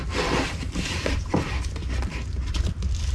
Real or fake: real